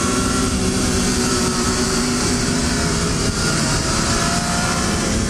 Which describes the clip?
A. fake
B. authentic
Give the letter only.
A